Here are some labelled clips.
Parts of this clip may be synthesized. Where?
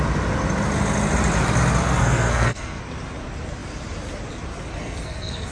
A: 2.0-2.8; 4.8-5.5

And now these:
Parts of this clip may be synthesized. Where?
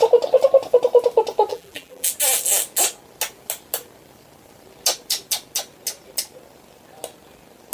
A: 1.5-2.1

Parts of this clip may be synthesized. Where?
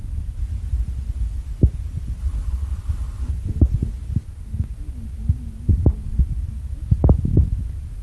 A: 2.2-3.3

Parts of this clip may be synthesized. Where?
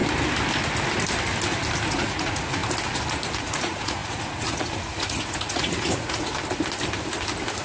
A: 1.9-2.6; 3.4-6.3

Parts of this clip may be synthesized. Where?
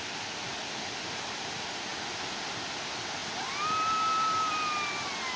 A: none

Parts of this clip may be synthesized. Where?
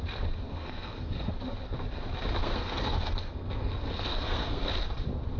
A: 0.5-1.3; 2.4-4.7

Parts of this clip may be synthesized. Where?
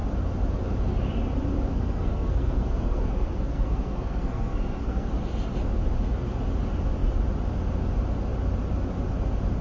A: 1.7-5.2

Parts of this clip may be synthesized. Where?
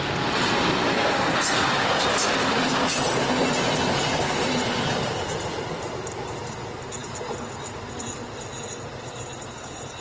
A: none